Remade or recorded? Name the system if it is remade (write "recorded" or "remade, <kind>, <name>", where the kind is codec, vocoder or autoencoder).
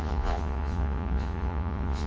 remade, vocoder, Vocos